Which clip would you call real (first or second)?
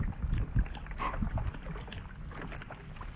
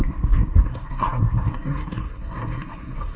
first